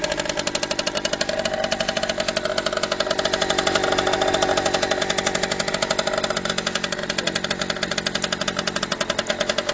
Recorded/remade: recorded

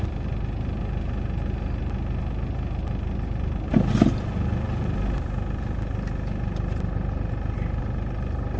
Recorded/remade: recorded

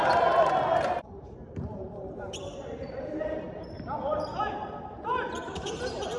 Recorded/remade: remade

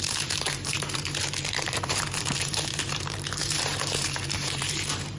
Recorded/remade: remade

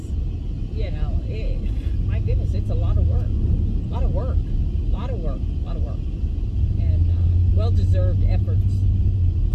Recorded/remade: recorded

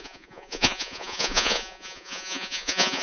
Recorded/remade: remade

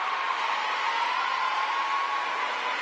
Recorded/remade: recorded